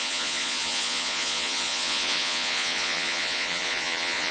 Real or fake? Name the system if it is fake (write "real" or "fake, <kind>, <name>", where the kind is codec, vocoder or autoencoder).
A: fake, vocoder, Vocos